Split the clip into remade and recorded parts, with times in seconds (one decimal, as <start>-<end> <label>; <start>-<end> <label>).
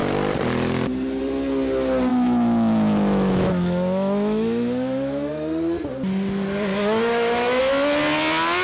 0.0-2.1 recorded; 2.1-5.3 remade; 5.3-6.7 recorded; 6.7-7.6 remade; 7.6-8.6 recorded